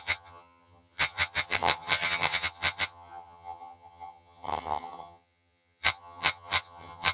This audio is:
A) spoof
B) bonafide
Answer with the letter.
A